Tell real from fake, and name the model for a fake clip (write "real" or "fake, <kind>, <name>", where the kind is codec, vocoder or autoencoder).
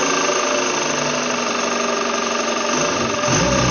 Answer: real